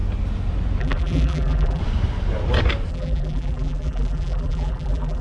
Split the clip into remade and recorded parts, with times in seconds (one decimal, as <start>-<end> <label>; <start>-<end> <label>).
0.0-0.8 recorded; 0.8-1.8 remade; 1.8-2.9 recorded; 2.9-5.2 remade

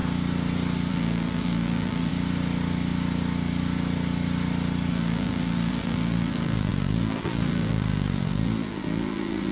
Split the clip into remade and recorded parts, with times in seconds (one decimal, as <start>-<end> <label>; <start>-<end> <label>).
0.0-0.9 recorded; 0.9-2.1 remade; 2.1-4.9 recorded; 4.9-9.5 remade

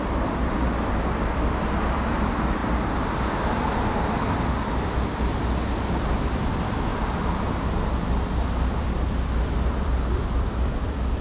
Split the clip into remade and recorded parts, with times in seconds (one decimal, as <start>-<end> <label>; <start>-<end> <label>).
0.0-2.6 remade; 2.6-3.4 recorded; 3.4-11.2 remade